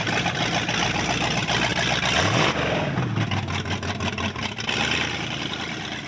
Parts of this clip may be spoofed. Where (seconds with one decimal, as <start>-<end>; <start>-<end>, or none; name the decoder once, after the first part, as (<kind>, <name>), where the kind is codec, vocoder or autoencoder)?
none